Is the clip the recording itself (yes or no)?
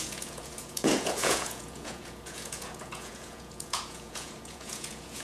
no